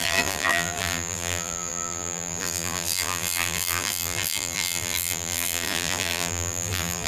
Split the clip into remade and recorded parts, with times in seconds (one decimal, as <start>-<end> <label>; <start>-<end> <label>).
0.0-7.1 remade